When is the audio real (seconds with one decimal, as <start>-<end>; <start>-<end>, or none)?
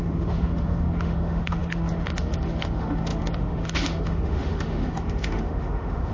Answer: none